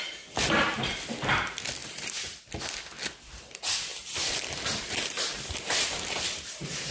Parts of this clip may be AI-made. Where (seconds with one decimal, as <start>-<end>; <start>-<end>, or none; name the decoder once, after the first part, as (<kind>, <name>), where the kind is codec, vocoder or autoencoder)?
1.8-2.4 (vocoder, BigVGAN v2); 3.9-6.9